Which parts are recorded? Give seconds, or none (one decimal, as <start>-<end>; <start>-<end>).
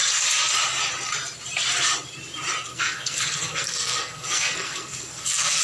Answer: 0.0-2.7